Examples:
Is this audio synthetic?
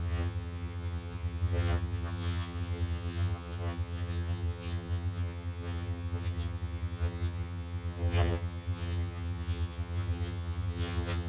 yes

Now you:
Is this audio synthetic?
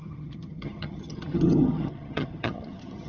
yes